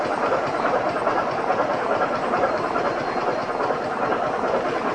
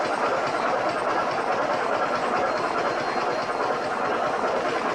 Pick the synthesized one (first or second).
first